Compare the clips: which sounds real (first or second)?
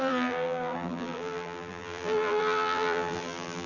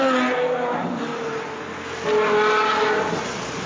second